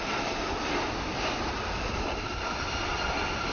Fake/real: fake